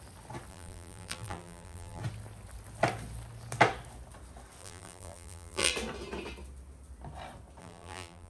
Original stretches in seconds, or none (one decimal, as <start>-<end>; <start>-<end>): 0.0-0.5; 2.0-4.6; 5.7-7.6